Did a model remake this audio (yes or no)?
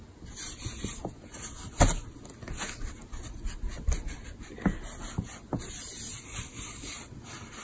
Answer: no